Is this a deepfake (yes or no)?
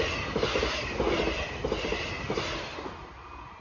no